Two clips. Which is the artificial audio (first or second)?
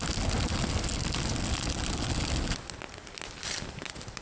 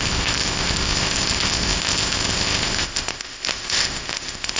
second